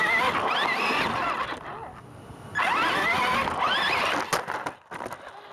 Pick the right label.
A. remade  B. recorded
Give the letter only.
B